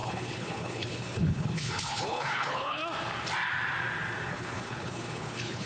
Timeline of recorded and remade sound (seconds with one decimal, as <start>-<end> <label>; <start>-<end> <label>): 0.0-2.8 remade; 2.8-4.3 recorded; 4.3-5.7 remade